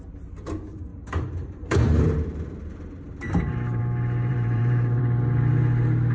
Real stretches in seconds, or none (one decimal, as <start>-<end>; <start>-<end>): 0.0-0.9; 3.8-4.3; 5.0-6.1